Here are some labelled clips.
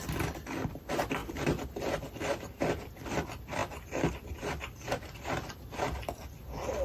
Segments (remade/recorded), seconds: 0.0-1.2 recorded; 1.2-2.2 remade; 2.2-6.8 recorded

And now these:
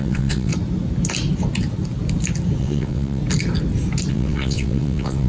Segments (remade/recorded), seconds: 0.0-0.5 remade; 0.5-2.6 recorded; 2.6-3.2 remade; 3.2-4.1 recorded; 4.1-5.3 remade

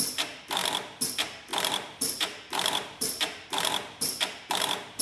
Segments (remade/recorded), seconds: 0.0-0.6 remade; 0.6-1.1 recorded; 1.1-5.0 remade

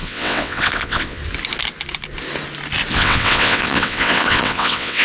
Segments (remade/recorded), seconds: 0.0-1.2 remade; 1.2-2.9 recorded; 2.9-5.0 remade

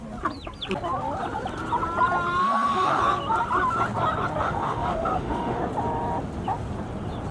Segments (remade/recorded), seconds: 0.0-2.4 recorded; 2.4-3.0 remade; 3.0-4.4 recorded; 4.4-5.6 remade; 5.6-7.3 recorded

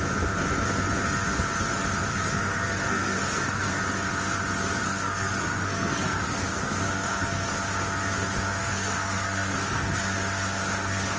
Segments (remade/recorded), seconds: 0.0-2.1 recorded; 2.1-3.8 remade; 3.8-4.8 recorded; 4.8-7.5 remade; 7.5-8.6 recorded; 8.6-10.0 remade; 10.0-11.2 recorded